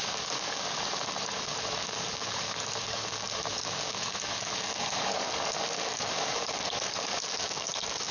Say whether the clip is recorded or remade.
remade